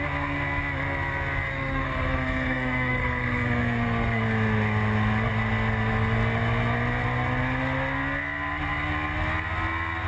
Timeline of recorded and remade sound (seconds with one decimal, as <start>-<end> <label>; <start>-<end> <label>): 0.0-1.5 recorded; 1.5-4.2 remade; 4.2-10.1 recorded